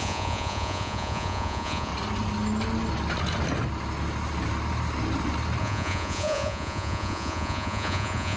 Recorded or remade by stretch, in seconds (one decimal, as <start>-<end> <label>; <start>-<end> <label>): 0.0-1.9 remade; 1.9-5.6 recorded; 5.6-8.4 remade